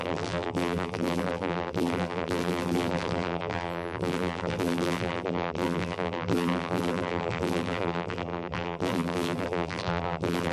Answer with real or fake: fake